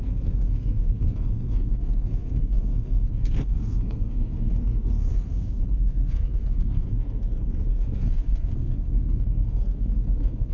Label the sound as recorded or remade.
remade